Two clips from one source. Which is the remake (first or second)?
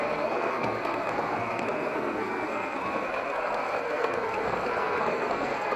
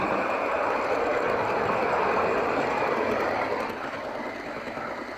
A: first